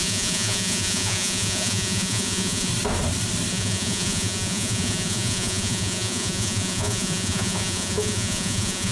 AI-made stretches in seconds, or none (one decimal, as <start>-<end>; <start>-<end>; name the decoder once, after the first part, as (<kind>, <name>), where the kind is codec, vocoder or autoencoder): 0.0-2.7 (vocoder, Vocos); 3.5-8.9